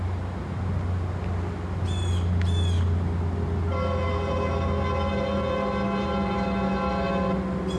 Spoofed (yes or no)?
no